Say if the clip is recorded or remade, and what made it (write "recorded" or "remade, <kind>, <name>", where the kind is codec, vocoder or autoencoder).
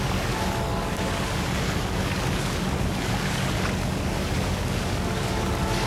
remade, codec, DAC